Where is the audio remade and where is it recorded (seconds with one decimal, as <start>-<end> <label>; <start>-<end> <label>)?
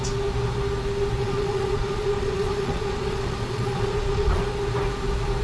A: 0.0-1.2 recorded; 1.2-4.4 remade; 4.4-5.4 recorded